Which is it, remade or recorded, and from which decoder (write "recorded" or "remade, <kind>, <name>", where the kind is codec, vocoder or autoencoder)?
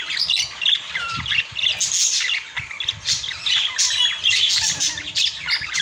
recorded